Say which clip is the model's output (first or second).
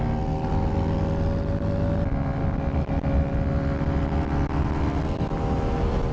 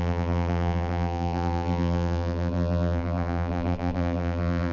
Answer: second